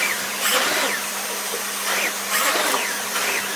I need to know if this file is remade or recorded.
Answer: recorded